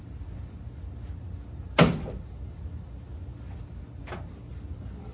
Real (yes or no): yes